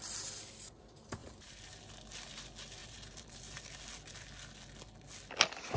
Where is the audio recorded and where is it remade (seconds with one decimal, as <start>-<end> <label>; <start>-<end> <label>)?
0.0-1.2 recorded; 1.2-1.9 remade; 1.9-2.8 recorded; 2.8-3.6 remade; 3.6-5.8 recorded